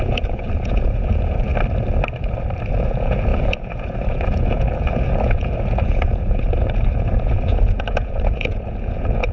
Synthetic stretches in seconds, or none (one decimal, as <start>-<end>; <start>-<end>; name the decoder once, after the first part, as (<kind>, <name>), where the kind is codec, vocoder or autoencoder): 0.0-1.5 (vocoder, Vocos); 2.7-9.3